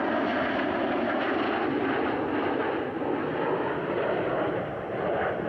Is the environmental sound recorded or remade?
recorded